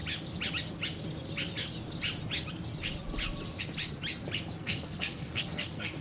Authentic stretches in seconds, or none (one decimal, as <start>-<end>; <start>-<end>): 0.0-4.6